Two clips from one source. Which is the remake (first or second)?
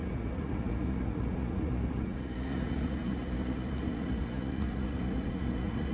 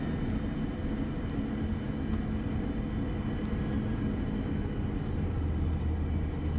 first